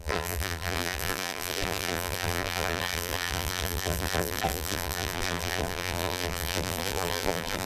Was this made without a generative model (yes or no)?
no